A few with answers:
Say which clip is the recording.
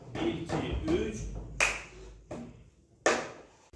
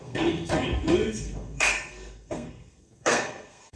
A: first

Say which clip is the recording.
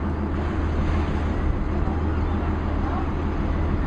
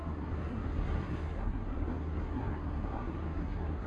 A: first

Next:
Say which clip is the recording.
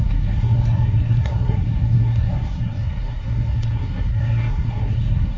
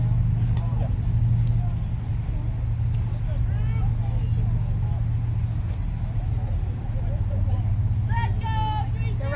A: second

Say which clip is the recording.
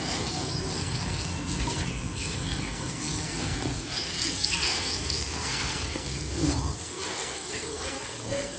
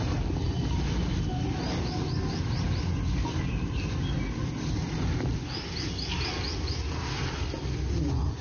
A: second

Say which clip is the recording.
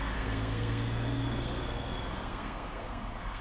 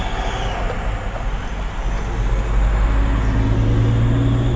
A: second